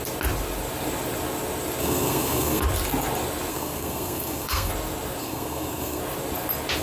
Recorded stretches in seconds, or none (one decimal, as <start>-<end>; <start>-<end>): 0.0-1.8; 2.6-3.5; 4.7-5.2; 6.0-6.8